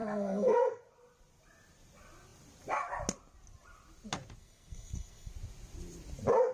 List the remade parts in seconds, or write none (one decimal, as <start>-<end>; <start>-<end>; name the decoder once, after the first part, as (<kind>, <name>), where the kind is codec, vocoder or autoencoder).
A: 0.0-0.8 (codec, SNAC); 4.4-5.3